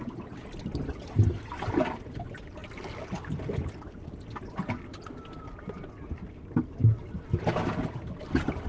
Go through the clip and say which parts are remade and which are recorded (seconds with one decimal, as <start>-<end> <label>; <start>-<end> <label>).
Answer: 0.0-8.7 recorded